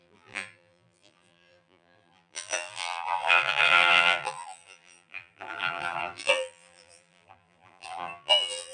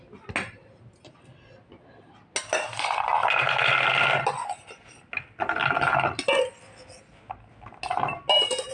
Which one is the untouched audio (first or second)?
second